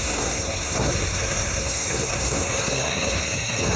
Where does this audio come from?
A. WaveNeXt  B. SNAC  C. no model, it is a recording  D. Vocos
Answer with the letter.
B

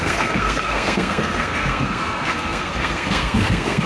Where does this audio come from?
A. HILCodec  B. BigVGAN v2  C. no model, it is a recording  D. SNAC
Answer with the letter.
D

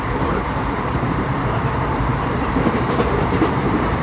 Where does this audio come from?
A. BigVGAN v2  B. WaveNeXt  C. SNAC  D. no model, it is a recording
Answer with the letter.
A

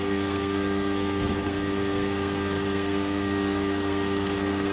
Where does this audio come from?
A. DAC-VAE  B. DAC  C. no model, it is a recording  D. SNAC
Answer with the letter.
D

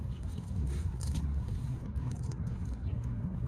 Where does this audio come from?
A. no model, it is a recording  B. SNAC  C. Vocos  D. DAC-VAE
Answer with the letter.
B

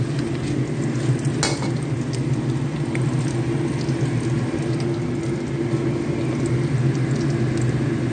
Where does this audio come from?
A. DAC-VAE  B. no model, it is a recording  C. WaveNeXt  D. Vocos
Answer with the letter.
B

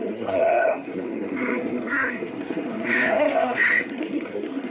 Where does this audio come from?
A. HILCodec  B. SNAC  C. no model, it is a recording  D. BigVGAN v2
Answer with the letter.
B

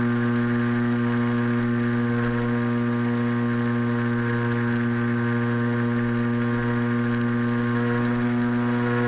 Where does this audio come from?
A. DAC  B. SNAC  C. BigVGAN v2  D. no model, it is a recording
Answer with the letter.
D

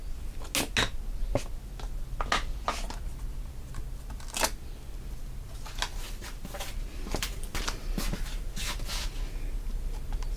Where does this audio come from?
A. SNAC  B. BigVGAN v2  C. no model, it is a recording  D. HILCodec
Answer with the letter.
C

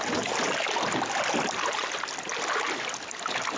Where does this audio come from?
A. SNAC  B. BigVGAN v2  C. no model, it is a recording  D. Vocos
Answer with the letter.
C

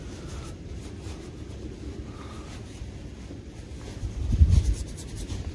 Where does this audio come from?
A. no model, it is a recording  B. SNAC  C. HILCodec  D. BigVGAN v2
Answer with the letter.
A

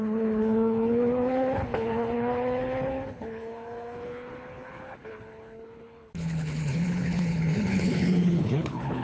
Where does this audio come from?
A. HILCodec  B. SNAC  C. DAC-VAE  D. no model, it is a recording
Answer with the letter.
A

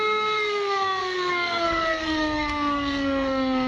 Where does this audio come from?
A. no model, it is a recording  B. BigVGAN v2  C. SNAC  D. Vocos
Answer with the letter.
C